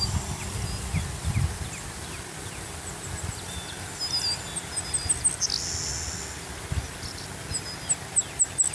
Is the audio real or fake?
real